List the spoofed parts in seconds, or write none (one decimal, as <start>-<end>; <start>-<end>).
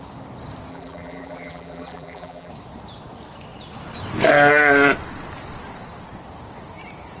0.7-2.5